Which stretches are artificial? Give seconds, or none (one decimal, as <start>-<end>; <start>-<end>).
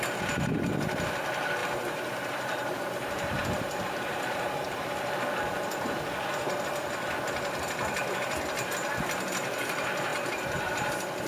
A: 1.6-5.1; 10.1-10.9